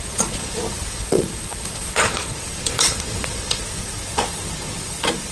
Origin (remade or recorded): remade